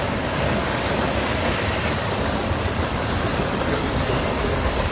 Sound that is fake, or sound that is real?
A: fake